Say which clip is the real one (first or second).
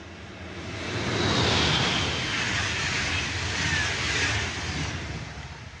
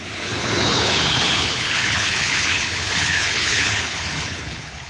first